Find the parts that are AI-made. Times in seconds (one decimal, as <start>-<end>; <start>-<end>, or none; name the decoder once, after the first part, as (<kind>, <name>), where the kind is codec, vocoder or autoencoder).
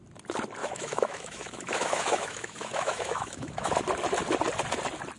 0.6-3.7 (autoencoder, DAC-VAE)